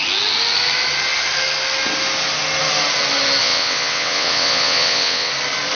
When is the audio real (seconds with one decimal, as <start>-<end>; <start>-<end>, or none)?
0.0-3.4; 5.3-5.7